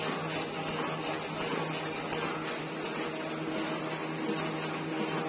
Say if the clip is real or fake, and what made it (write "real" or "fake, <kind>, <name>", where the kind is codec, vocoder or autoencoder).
real